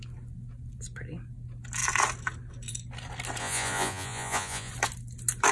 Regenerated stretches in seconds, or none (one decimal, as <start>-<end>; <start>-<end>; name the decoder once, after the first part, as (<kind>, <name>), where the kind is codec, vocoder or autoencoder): 3.4-4.7 (vocoder, Vocos)